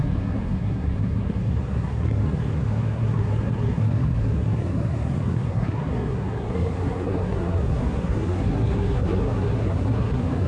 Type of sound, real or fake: fake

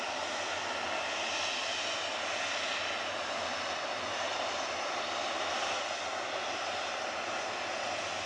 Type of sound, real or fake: real